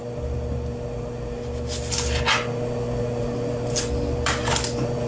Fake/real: real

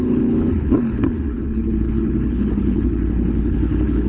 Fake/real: fake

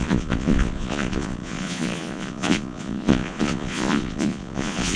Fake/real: fake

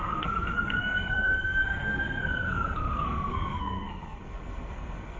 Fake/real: fake